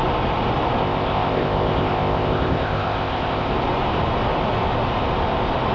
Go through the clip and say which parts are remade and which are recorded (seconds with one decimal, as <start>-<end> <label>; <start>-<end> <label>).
0.0-0.8 recorded; 0.8-3.5 remade; 3.5-5.7 recorded

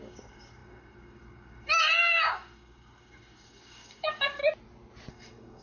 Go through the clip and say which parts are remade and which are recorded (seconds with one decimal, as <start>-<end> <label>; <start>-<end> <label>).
0.0-4.4 remade; 4.4-5.1 recorded; 5.1-5.6 remade

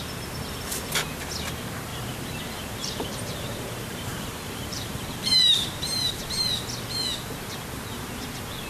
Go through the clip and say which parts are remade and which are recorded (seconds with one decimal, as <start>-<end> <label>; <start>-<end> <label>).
0.0-1.9 recorded; 1.9-6.1 remade; 6.1-8.7 recorded